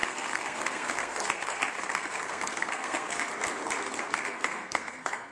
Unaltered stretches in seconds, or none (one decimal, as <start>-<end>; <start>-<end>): 3.3-4.0

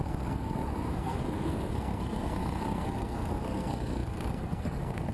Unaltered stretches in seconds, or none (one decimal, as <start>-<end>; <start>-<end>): none

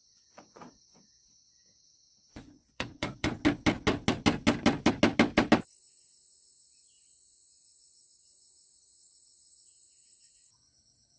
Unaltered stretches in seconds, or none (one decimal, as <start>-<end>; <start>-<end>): 3.3-5.8

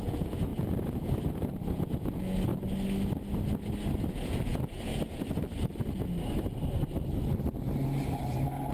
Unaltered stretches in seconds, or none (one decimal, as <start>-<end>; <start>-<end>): 2.5-4.1; 4.9-8.7

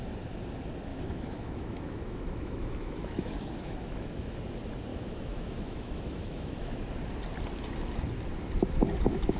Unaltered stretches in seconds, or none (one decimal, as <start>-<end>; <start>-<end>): 0.0-0.9; 4.4-4.9; 6.9-9.4

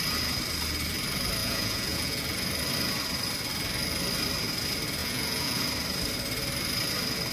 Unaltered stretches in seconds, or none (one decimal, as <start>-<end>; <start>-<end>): 0.0-1.4; 2.2-5.0; 5.6-7.3

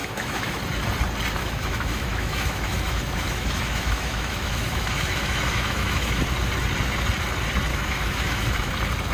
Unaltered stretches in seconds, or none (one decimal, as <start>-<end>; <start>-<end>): 0.6-1.4; 6.2-7.7; 8.7-9.1

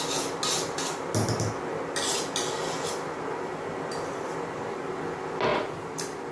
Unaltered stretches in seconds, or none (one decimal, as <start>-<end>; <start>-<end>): 0.0-6.3